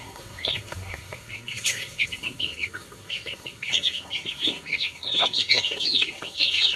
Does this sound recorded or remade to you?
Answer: remade